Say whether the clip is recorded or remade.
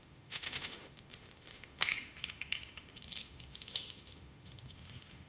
remade